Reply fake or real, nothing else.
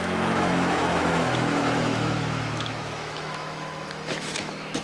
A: fake